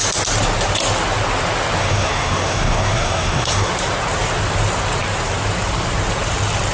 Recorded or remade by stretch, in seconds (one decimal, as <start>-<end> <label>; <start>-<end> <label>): 0.0-1.8 recorded; 1.8-3.7 remade; 3.7-6.7 recorded